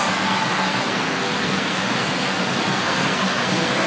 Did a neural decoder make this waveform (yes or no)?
yes